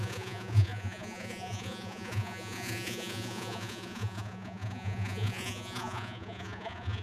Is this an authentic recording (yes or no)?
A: no